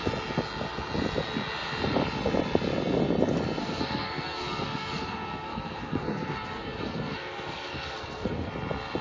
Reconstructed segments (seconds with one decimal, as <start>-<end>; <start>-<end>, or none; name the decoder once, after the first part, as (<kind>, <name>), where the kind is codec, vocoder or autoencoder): 3.6-8.5 (codec, SNAC)

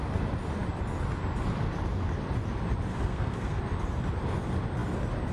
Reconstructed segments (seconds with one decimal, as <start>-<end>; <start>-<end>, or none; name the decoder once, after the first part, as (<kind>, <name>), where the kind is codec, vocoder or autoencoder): 2.9-3.6 (codec, SNAC)

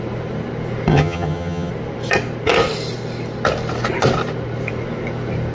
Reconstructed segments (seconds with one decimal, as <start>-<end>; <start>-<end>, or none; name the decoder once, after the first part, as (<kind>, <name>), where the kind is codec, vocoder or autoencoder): 0.9-1.7 (vocoder, HiFi-GAN)

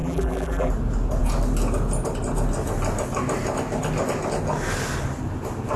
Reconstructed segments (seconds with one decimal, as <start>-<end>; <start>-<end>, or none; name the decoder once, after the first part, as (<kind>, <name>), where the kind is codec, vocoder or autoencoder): 0.0-0.7 (vocoder, BigVGAN v2)

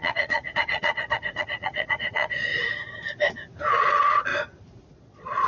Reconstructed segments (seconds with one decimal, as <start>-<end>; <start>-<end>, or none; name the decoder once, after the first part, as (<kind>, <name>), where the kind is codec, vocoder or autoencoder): 0.0-2.5 (vocoder, Vocos); 3.8-4.3; 4.9-5.5

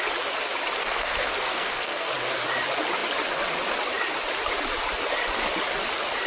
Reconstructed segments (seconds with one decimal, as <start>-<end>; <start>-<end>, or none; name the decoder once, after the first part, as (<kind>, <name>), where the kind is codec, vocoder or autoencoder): 0.8-2.1 (codec, SNAC)